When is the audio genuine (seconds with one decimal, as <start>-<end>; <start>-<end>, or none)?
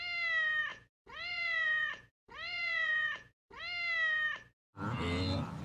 0.0-0.7; 3.6-5.6